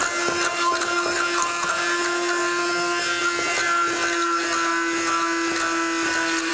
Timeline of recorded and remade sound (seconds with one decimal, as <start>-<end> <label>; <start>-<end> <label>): 0.0-6.5 recorded